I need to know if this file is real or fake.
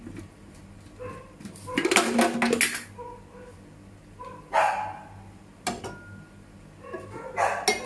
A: real